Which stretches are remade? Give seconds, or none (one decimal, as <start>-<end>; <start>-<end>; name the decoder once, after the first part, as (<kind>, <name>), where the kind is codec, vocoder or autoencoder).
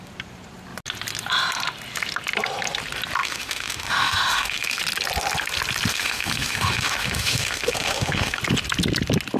3.2-4.8 (autoencoder, DAC-VAE); 5.9-8.4